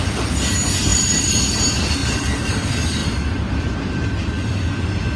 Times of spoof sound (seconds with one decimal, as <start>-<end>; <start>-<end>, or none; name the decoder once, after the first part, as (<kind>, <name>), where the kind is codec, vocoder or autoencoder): 0.9-1.5 (vocoder, BigVGAN v2); 2.0-2.5; 3.0-4.7